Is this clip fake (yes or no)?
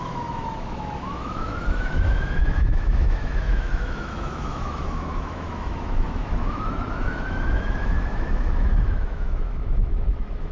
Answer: yes